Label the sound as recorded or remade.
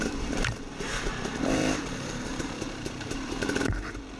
remade